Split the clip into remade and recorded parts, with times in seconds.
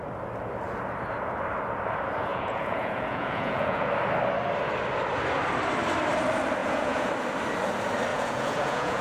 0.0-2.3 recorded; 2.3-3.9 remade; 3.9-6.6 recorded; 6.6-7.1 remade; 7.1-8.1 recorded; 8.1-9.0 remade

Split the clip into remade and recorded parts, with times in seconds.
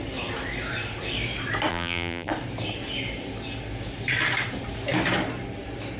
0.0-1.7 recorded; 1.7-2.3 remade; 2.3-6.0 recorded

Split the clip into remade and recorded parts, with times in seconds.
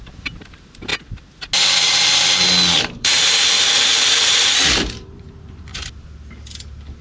0.0-0.9 remade; 0.9-2.8 recorded; 2.8-5.7 remade; 5.7-7.0 recorded